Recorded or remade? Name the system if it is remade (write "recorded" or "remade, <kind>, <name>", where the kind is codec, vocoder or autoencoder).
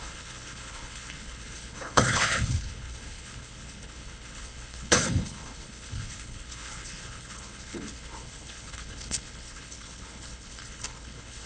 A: remade, codec, HILCodec